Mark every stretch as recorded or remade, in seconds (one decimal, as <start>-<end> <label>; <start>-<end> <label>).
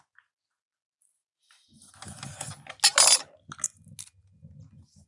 0.0-5.1 recorded